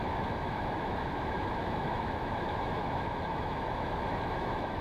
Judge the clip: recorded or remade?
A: remade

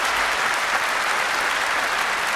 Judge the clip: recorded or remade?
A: recorded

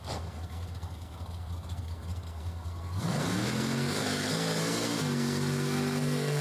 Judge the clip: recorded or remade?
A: remade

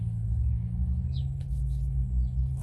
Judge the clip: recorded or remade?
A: recorded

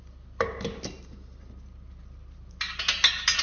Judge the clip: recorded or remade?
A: recorded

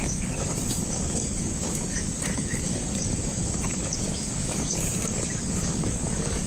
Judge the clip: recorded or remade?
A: remade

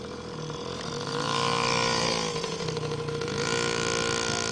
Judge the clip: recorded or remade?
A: recorded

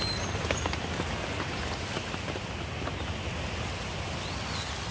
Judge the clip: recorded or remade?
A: recorded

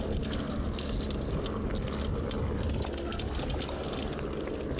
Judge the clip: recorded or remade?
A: recorded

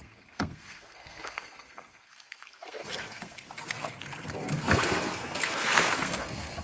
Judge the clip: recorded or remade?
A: remade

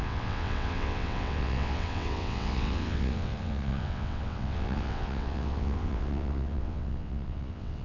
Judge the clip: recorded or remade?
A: remade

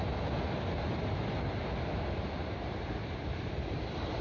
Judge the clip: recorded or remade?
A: remade